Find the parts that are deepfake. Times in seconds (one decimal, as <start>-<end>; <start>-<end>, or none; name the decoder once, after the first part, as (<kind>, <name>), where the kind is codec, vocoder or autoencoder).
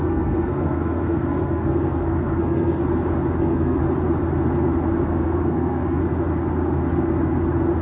0.0-2.8 (codec, SNAC); 3.4-3.8; 5.0-6.0